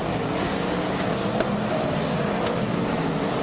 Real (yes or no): yes